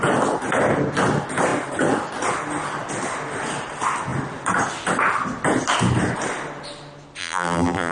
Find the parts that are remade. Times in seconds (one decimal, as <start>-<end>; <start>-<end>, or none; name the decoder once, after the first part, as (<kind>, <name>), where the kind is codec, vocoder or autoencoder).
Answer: 7.2-7.9 (vocoder, BigVGAN v2)